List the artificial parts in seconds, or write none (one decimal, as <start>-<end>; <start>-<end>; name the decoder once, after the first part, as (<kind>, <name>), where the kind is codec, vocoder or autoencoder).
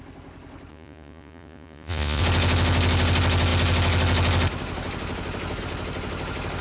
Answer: 0.7-2.2 (vocoder, Vocos)